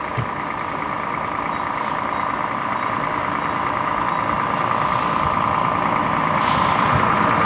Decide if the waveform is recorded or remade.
recorded